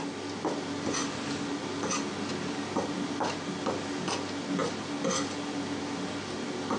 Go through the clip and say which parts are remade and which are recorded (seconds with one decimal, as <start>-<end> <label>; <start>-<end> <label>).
0.0-6.8 recorded

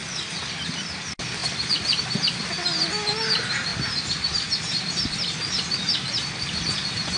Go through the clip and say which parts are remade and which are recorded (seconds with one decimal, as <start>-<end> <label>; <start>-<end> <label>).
0.0-7.2 recorded

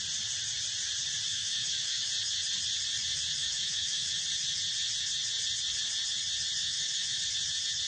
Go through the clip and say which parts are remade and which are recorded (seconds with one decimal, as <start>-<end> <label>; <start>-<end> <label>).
0.0-1.3 recorded; 1.3-2.1 remade; 2.1-3.4 recorded; 3.4-4.2 remade; 4.2-6.6 recorded; 6.6-7.2 remade; 7.2-7.9 recorded

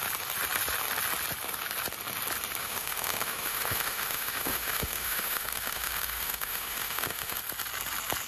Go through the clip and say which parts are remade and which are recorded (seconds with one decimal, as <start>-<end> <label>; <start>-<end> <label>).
0.0-2.6 recorded; 2.6-7.4 remade; 7.4-8.3 recorded

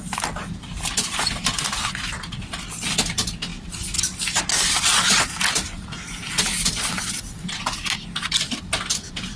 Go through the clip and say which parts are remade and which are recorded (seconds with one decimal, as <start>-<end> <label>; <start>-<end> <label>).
0.0-9.4 recorded

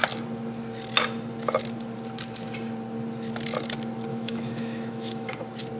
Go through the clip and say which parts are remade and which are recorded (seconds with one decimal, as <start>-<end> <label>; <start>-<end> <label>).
0.0-4.1 recorded; 4.1-5.3 remade; 5.3-5.8 recorded

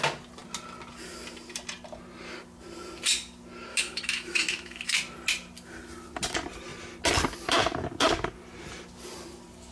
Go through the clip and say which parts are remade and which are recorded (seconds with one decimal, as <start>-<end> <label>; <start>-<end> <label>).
0.0-3.7 recorded; 3.7-4.9 remade; 4.9-9.7 recorded

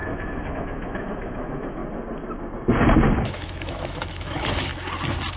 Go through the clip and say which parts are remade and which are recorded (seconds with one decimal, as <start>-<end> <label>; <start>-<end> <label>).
0.0-1.8 remade; 1.8-3.2 recorded; 3.2-4.7 remade; 4.7-5.4 recorded